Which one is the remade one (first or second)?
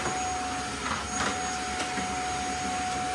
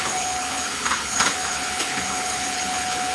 second